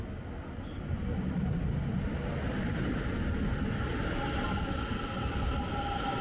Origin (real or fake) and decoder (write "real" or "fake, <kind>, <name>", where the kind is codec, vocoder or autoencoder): real